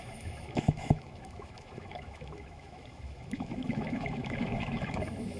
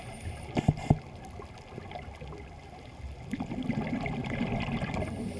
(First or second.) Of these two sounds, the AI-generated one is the first